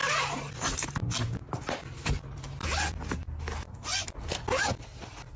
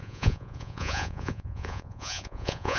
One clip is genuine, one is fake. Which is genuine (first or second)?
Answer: first